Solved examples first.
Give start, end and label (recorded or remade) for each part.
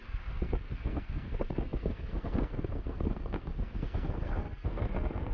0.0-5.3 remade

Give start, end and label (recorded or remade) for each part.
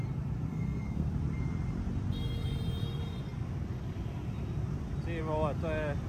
0.0-0.5 recorded; 0.5-1.1 remade; 1.1-6.1 recorded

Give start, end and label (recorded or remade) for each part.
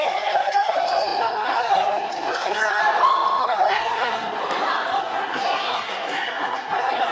0.0-2.8 remade; 2.8-3.4 recorded; 3.4-4.4 remade; 4.4-5.0 recorded; 5.0-7.1 remade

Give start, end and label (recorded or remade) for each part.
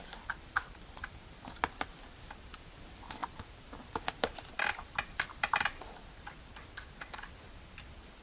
0.0-8.2 recorded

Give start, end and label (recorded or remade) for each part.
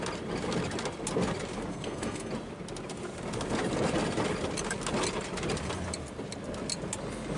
0.0-1.7 recorded; 1.7-2.3 remade; 2.3-7.4 recorded